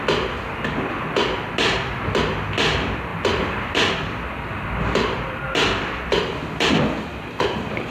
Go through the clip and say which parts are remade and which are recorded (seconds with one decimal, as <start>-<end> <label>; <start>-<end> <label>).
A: 0.0-3.1 recorded; 3.1-6.8 remade; 6.8-7.9 recorded